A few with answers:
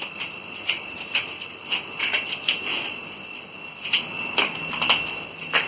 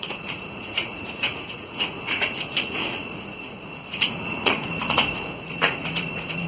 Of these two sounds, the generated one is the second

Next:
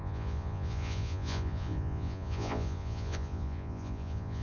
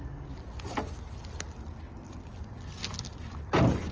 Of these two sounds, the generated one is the first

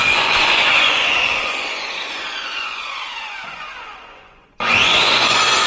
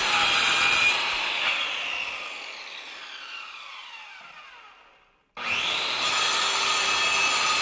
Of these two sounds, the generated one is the first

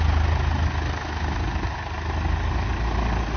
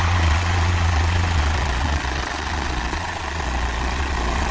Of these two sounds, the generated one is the second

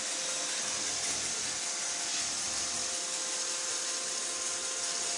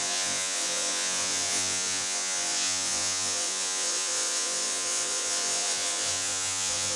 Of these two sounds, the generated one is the second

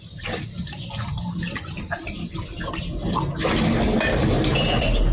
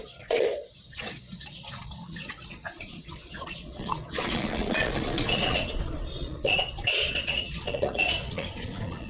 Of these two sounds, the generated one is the second